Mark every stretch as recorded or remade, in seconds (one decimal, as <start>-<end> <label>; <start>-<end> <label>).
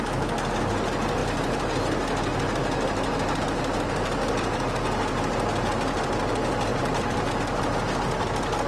0.0-8.7 recorded